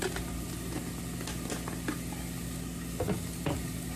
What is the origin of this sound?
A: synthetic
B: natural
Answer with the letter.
B